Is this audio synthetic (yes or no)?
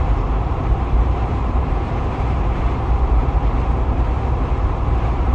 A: yes